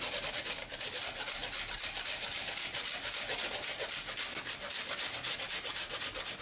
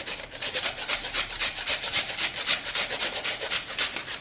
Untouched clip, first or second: first